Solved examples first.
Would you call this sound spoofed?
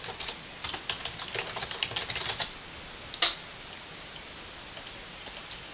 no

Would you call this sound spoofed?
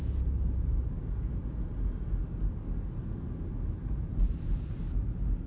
no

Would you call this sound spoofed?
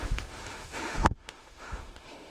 yes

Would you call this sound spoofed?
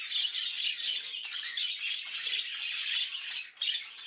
no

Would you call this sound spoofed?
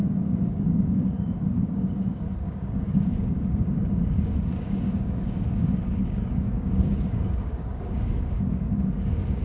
yes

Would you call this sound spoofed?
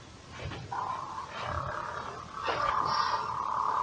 no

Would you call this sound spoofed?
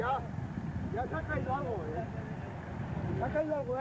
no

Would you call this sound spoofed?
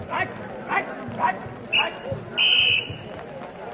no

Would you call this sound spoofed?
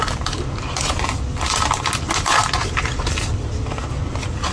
no